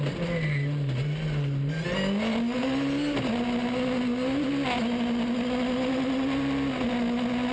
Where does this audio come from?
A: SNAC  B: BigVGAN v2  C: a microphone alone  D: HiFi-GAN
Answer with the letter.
C